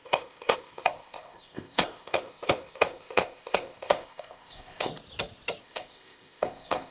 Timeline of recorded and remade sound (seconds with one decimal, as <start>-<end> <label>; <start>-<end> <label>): 0.0-4.9 remade; 4.9-5.6 recorded; 5.6-6.9 remade